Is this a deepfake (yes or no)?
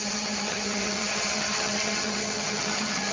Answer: yes